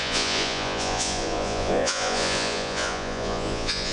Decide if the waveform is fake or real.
fake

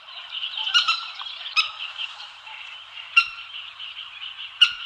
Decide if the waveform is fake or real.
fake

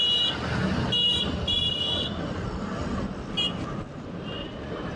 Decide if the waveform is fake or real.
real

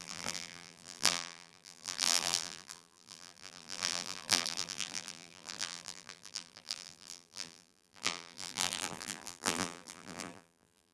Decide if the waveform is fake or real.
fake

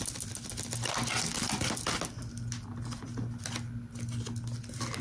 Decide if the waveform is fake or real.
real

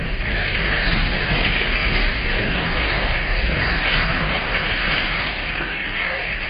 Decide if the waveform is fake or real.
fake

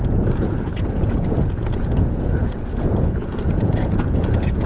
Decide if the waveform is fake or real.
fake